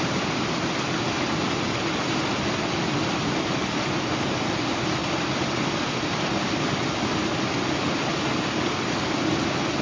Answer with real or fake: real